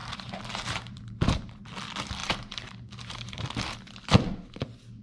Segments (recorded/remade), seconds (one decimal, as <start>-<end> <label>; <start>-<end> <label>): 0.0-1.6 remade; 1.6-2.2 recorded; 2.2-3.4 remade; 3.4-5.0 recorded